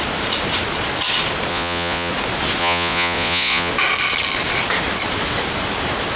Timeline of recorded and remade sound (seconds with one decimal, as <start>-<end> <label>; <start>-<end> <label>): 0.0-1.5 recorded; 1.5-2.1 remade; 2.1-2.6 recorded; 2.6-3.7 remade; 3.7-6.2 recorded